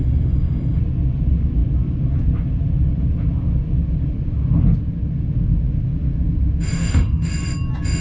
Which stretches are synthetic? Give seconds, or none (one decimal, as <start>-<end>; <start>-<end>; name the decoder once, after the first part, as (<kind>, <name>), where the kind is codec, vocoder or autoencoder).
0.0-0.8 (autoencoder, DAC-VAE); 6.7-7.3